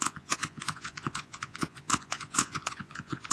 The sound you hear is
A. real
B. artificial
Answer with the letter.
B